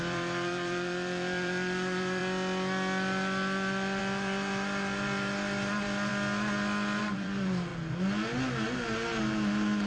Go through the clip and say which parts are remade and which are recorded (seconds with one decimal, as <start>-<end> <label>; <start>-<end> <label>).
0.0-2.2 remade; 2.2-4.0 recorded; 4.0-6.1 remade; 6.1-7.0 recorded; 7.0-7.7 remade; 7.7-9.9 recorded